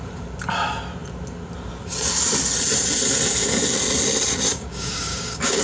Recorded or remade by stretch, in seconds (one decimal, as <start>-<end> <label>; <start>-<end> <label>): 0.0-4.5 recorded; 4.5-5.6 remade